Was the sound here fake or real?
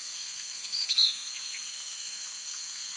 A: fake